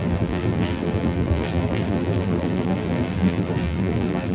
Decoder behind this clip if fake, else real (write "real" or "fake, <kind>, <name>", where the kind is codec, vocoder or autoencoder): fake, vocoder, BigVGAN v2